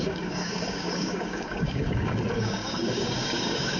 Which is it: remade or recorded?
remade